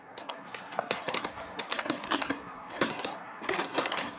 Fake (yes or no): yes